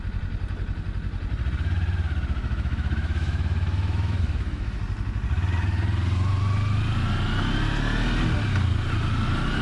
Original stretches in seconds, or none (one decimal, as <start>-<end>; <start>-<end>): 0.0-2.4; 4.8-9.6